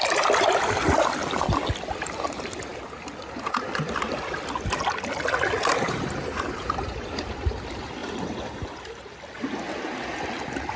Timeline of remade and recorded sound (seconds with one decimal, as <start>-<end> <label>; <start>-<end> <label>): 0.0-5.7 recorded; 5.7-7.5 remade; 7.5-8.0 recorded; 8.0-9.1 remade; 9.1-10.8 recorded